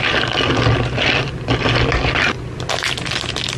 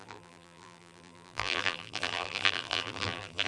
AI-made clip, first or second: second